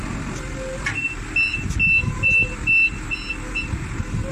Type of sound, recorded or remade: recorded